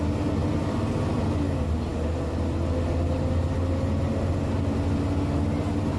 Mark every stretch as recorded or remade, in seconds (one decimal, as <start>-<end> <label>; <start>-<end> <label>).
0.0-6.0 recorded